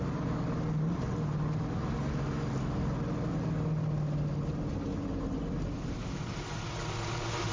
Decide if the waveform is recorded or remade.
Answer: recorded